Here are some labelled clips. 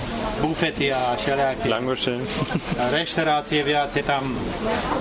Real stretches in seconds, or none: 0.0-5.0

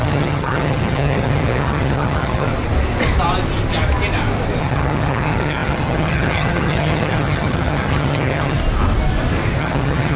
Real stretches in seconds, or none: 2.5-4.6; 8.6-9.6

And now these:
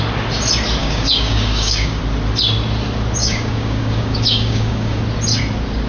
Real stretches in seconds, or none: 0.0-0.8; 2.0-3.2; 5.0-5.9

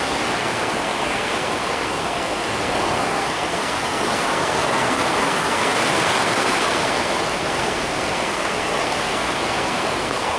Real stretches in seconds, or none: none

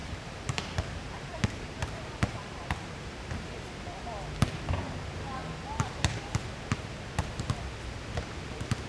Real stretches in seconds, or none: 3.5-8.9

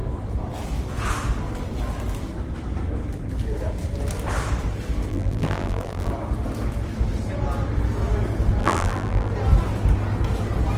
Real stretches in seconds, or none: 0.0-5.1; 6.1-8.6; 9.3-10.8